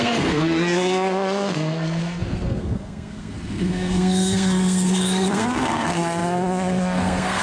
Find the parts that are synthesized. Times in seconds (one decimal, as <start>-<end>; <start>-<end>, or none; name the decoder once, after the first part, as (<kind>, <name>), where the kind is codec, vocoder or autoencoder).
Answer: 0.0-7.4 (codec, SNAC)